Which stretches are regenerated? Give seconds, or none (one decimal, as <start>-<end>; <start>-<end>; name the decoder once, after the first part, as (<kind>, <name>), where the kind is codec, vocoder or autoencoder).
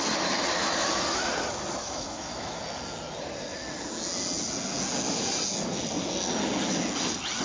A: 0.5-1.2 (autoencoder, DAC-VAE); 1.8-2.6